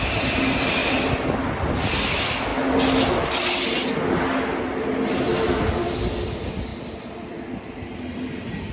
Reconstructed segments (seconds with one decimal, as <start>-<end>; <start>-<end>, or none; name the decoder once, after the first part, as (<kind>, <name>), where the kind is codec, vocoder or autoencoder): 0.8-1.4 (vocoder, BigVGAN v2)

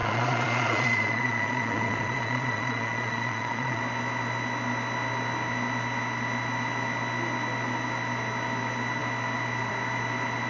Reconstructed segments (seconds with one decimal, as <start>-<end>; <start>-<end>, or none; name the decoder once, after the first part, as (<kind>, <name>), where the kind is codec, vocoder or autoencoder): 0.0-3.8 (vocoder, Vocos)

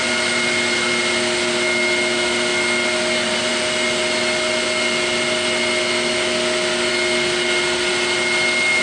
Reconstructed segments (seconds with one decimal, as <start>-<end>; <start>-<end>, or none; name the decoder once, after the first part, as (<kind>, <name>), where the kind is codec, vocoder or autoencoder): none

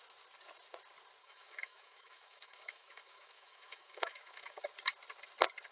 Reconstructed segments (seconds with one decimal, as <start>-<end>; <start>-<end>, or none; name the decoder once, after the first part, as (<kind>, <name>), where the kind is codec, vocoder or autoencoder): 1.2-4.6 (autoencoder, DAC-VAE)

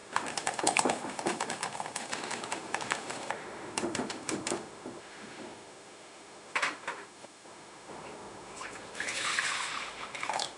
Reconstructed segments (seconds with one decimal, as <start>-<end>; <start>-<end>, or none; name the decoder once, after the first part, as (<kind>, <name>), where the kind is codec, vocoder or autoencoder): 0.0-10.6 (autoencoder, DAC-VAE)